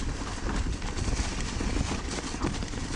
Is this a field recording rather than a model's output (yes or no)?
yes